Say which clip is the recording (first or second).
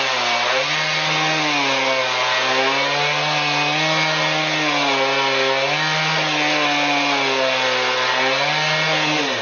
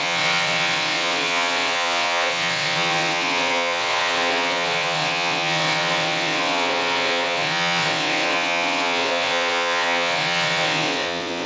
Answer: first